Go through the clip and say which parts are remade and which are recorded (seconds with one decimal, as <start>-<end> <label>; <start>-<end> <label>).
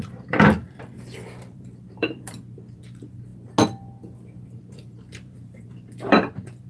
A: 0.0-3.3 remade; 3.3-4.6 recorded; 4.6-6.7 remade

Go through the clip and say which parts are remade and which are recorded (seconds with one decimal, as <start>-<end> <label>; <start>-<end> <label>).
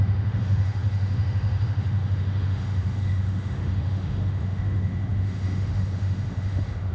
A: 0.0-6.9 remade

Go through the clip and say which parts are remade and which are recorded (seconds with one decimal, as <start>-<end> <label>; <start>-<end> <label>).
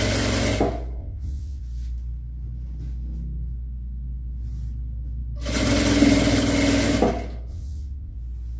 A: 0.0-1.0 recorded; 1.0-1.6 remade; 1.6-7.5 recorded; 7.5-8.2 remade; 8.2-8.6 recorded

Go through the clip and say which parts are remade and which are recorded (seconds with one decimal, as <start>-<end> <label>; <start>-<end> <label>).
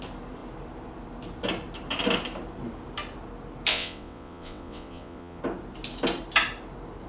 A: 0.0-3.7 recorded; 3.7-5.4 remade; 5.4-7.1 recorded